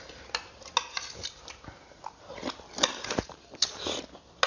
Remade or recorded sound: recorded